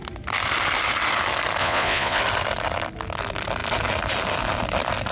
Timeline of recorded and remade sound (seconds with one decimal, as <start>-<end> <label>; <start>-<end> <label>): 0.0-1.6 recorded; 1.6-2.2 remade; 2.2-5.1 recorded